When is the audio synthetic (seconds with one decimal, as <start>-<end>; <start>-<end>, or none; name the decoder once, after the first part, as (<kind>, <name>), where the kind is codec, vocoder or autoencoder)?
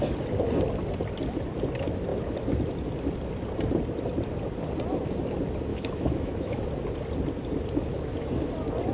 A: 5.7-6.6 (autoencoder, DAC-VAE); 7.9-8.5